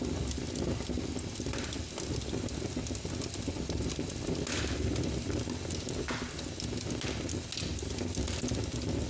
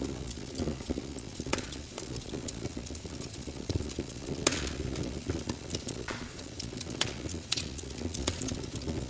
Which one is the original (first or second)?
first